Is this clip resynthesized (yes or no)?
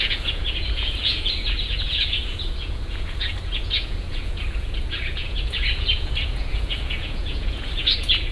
yes